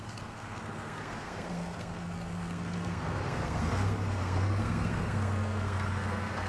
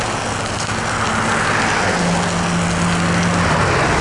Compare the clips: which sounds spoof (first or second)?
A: first